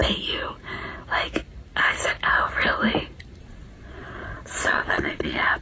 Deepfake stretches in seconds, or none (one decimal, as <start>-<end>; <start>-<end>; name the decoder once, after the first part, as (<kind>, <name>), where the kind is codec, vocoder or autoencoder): 3.4-5.6 (vocoder, Vocos)